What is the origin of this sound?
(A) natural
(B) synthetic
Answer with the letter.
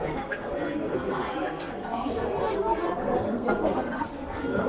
B